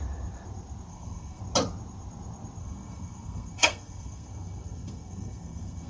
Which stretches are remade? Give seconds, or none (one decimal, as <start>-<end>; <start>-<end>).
0.9-1.4; 2.6-5.9